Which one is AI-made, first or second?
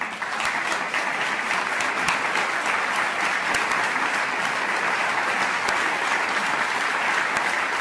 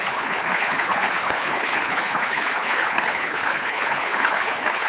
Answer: second